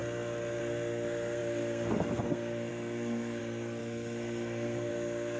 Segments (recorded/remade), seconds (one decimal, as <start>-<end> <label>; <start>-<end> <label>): 0.0-0.6 recorded; 0.6-5.4 remade